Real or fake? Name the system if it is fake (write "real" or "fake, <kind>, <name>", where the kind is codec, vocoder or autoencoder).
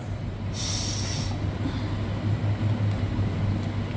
real